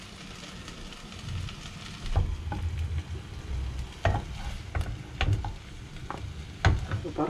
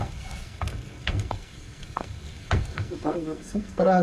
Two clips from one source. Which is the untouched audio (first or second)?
first